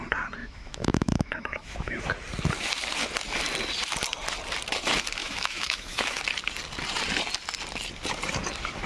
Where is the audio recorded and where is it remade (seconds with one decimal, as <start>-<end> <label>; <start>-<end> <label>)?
0.0-0.4 recorded; 0.4-2.0 remade; 2.0-5.2 recorded; 5.2-6.2 remade; 6.2-8.9 recorded

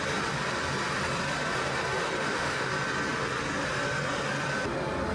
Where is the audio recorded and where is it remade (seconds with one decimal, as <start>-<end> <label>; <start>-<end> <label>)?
0.0-2.2 recorded; 2.2-2.7 remade; 2.7-5.1 recorded

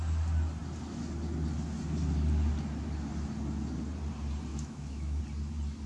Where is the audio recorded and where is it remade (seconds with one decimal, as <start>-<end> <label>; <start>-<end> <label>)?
0.0-4.5 recorded; 4.5-5.2 remade; 5.2-5.9 recorded

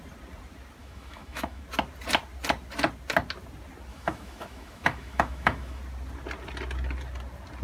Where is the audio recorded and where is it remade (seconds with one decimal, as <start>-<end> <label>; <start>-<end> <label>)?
0.0-0.8 recorded; 0.8-1.6 remade; 1.6-3.9 recorded; 3.9-5.8 remade; 5.8-7.6 recorded

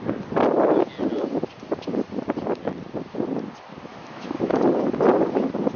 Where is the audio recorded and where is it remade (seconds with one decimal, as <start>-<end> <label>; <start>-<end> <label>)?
0.0-3.9 recorded; 3.9-4.6 remade; 4.6-5.8 recorded

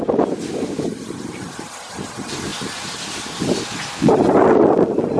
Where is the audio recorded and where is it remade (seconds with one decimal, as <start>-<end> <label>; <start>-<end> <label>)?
0.0-5.2 recorded

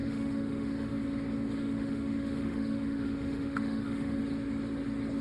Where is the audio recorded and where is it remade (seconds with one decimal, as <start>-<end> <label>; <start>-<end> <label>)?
0.0-0.9 remade; 0.9-1.6 recorded; 1.6-4.2 remade; 4.2-5.2 recorded